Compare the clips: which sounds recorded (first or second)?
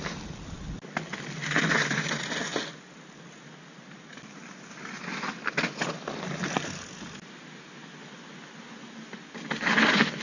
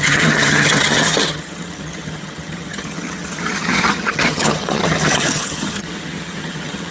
first